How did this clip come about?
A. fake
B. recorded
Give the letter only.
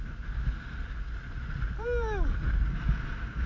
B